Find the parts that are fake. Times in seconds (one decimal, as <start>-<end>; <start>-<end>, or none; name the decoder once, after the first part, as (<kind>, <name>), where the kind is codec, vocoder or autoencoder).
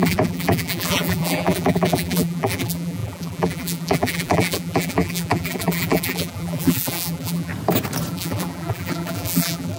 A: 0.0-7.5 (vocoder, BigVGAN v2); 8.1-9.8